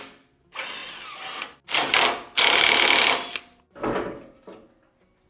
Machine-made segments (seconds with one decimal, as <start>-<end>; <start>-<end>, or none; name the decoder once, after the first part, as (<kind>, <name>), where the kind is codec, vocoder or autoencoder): none